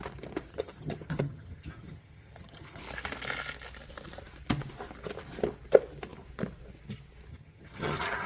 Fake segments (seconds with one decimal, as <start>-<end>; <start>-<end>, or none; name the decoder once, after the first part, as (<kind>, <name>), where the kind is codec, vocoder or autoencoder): 0.5-2.8 (vocoder, HiFi-GAN); 7.3-8.3